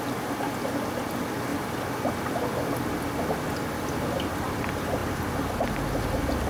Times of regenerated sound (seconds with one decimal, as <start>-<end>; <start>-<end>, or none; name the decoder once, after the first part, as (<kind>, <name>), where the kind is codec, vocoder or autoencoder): 1.5-2.1 (vocoder, BigVGAN v2)